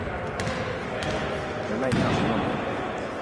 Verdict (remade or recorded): recorded